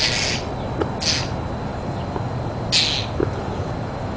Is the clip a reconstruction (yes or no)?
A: no